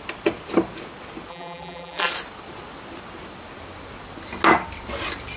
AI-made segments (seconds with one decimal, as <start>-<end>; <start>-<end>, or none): 1.3-2.1